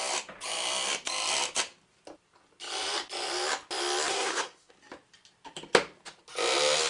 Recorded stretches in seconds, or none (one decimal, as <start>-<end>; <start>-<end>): 0.0-4.1; 4.7-6.9